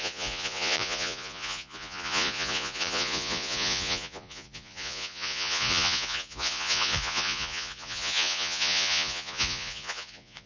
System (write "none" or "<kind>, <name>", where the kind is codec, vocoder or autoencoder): vocoder, Vocos